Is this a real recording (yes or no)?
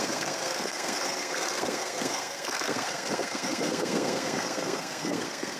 no